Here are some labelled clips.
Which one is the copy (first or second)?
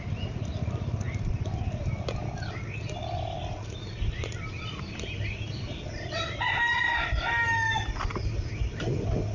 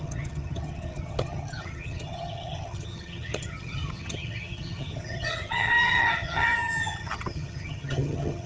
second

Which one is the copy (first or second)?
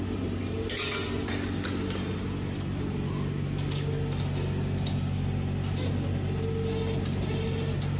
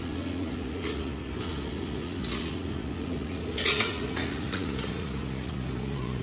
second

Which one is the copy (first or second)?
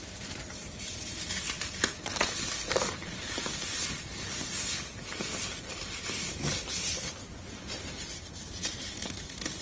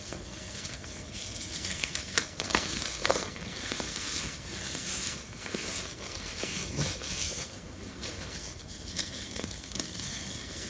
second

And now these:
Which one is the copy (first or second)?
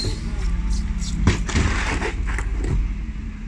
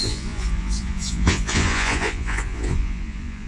second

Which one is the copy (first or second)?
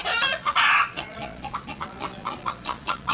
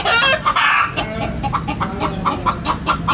first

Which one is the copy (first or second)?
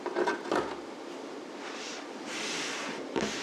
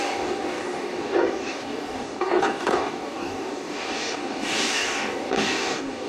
second